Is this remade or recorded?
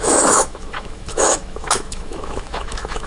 remade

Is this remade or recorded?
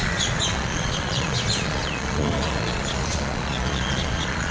remade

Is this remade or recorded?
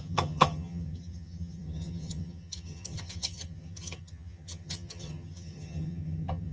remade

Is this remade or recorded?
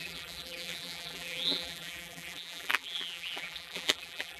remade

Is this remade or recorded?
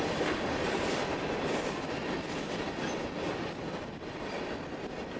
recorded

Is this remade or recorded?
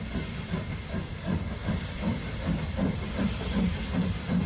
recorded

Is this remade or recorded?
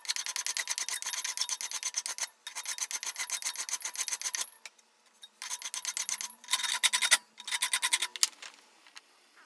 recorded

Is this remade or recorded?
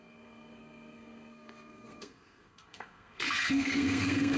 remade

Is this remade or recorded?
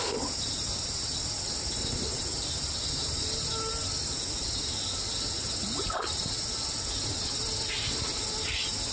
recorded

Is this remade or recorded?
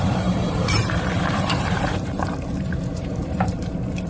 remade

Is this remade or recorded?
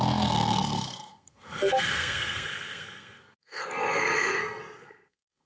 remade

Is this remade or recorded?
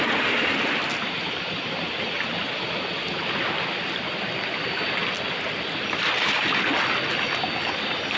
recorded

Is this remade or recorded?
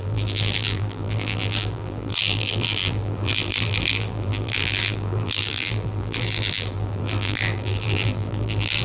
remade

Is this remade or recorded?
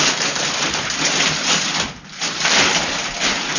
recorded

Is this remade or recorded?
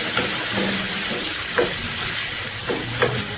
recorded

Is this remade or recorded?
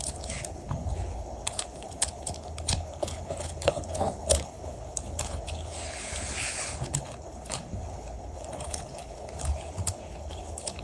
remade